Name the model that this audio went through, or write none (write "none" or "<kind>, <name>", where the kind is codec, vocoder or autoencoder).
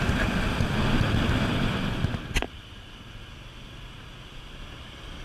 none